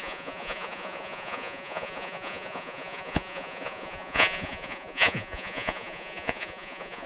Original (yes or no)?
no